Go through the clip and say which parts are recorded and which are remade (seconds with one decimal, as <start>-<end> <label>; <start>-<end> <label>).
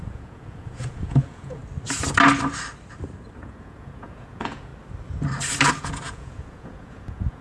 0.0-1.6 remade; 1.6-3.3 recorded; 3.3-4.7 remade; 4.7-5.7 recorded; 5.7-7.4 remade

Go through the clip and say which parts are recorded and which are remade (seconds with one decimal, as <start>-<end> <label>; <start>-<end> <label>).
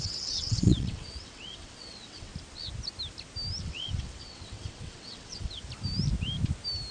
0.0-2.3 remade; 2.3-3.6 recorded; 3.6-5.6 remade; 5.6-6.9 recorded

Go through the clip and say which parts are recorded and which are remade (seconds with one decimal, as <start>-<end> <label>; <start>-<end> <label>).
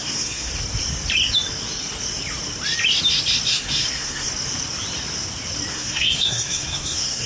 0.0-0.5 remade; 0.5-3.5 recorded; 3.5-4.3 remade; 4.3-5.7 recorded; 5.7-7.3 remade